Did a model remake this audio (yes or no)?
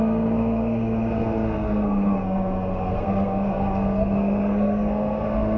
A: yes